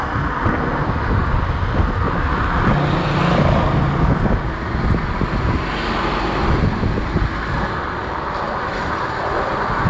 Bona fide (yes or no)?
yes